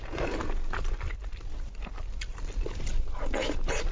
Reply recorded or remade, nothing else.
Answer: recorded